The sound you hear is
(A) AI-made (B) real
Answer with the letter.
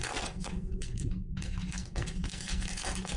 A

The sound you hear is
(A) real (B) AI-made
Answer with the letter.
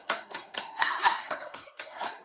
B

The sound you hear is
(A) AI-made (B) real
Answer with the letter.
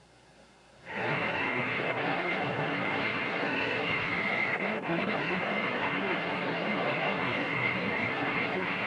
A